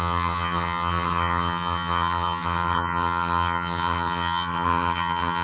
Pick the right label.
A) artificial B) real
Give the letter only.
A